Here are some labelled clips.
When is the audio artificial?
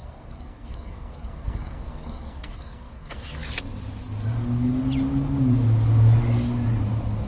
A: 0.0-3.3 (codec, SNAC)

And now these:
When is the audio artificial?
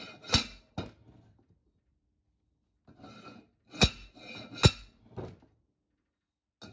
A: none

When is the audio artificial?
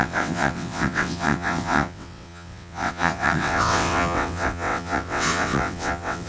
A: 0.0-6.3 (vocoder, WaveNeXt)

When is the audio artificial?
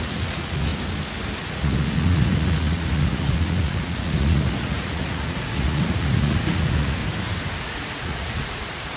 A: 0.0-0.7 (vocoder, Vocos); 1.5-7.0; 7.6-9.0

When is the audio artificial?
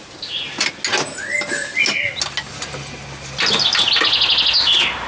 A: none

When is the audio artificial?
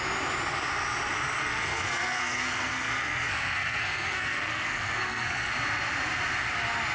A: 1.4-5.5 (codec, SNAC)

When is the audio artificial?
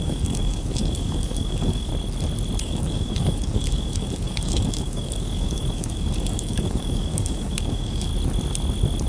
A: 0.0-1.9 (codec, DAC); 2.6-8.1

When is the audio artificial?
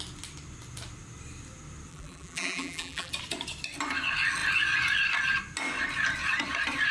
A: 1.9-3.1 (vocoder, BigVGAN v2)